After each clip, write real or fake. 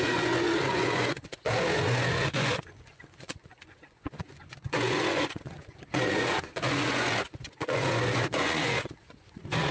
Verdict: fake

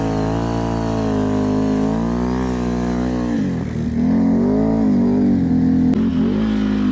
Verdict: real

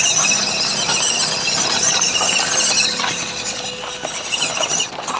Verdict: real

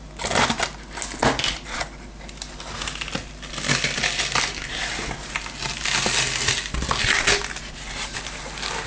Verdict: real